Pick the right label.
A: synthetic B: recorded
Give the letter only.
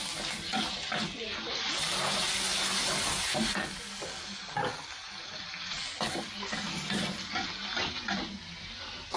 B